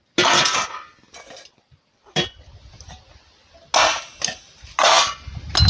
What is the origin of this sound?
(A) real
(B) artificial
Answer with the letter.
A